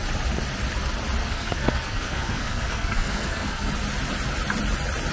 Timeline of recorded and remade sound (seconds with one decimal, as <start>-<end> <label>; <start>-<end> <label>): 0.0-1.2 recorded; 1.2-3.7 remade; 3.7-5.1 recorded